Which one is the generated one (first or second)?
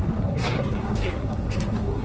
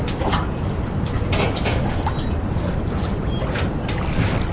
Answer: first